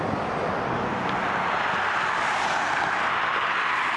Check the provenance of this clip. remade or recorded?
recorded